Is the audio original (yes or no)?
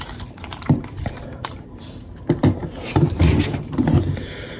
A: no